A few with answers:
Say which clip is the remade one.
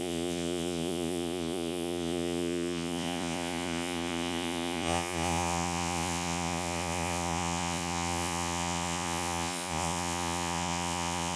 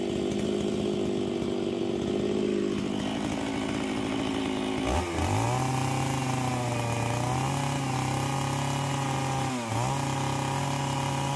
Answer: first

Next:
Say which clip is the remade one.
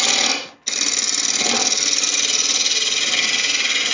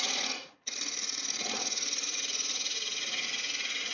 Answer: second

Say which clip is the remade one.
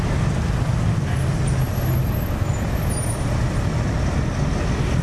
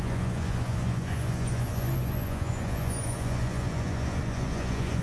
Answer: second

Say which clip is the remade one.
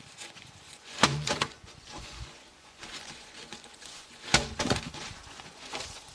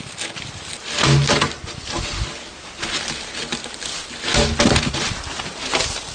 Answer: first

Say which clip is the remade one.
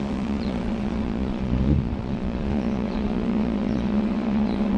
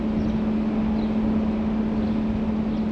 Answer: first